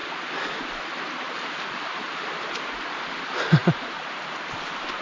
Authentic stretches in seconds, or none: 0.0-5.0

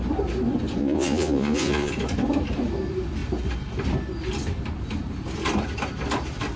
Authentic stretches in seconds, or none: 0.0-0.8; 1.9-6.6

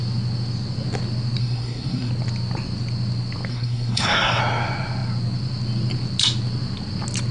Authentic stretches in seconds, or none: 0.0-1.4; 2.1-3.5; 4.4-7.3

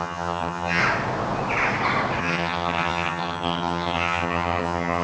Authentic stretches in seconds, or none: 0.8-2.2